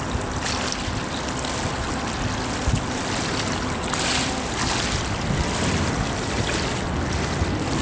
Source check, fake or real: real